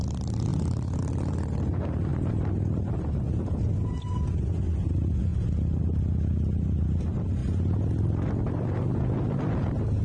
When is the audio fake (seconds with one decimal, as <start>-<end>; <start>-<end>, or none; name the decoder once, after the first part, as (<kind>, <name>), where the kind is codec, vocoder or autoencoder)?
0.5-1.0 (vocoder, BigVGAN v2); 2.1-3.7; 7.4-8.3